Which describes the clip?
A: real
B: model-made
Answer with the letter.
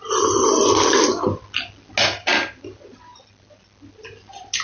A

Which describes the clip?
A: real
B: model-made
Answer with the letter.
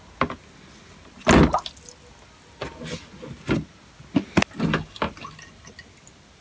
A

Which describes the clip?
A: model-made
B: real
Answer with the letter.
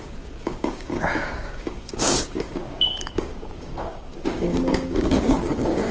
A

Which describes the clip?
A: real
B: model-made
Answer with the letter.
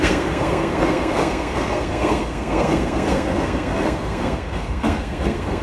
B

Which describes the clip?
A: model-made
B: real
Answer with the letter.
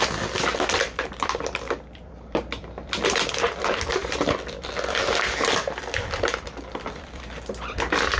A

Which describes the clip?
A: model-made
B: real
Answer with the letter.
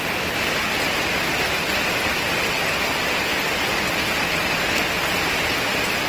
B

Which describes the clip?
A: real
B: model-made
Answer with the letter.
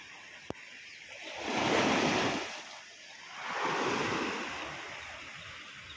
A